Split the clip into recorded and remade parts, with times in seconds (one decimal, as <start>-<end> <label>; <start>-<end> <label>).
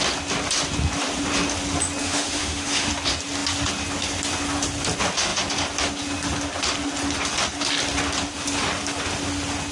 0.0-2.0 recorded; 2.0-2.9 remade; 2.9-9.7 recorded